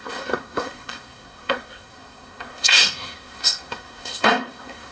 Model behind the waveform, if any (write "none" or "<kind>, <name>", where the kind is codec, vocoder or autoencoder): codec, SNAC